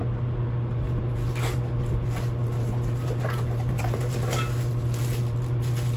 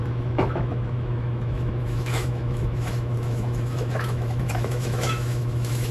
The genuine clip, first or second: first